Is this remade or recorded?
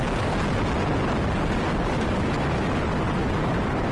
recorded